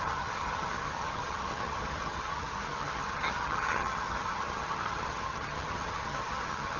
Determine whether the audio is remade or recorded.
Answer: remade